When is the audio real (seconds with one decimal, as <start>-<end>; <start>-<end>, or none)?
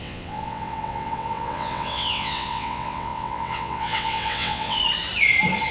4.8-5.7